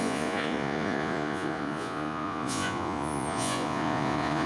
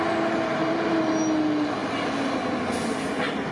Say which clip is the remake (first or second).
first